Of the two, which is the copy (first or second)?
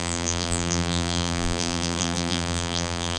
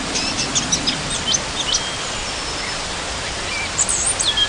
first